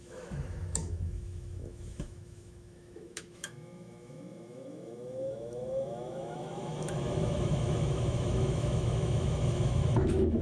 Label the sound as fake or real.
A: fake